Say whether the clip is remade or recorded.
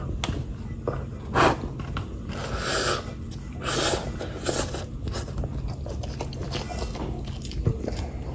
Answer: recorded